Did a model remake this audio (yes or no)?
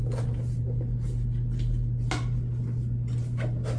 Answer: no